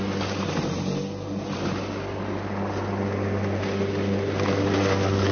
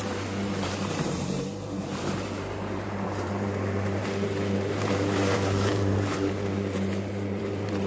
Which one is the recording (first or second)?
first